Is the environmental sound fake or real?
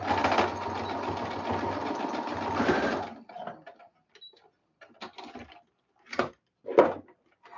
real